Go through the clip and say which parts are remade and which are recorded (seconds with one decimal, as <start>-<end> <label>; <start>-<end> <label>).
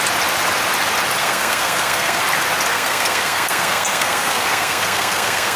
0.0-1.2 recorded; 1.2-2.2 remade; 2.2-2.7 recorded; 2.7-5.6 remade